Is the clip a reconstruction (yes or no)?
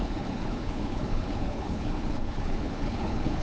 yes